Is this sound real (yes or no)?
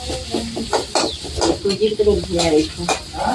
yes